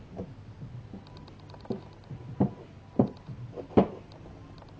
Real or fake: real